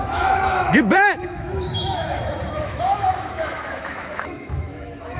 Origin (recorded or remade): remade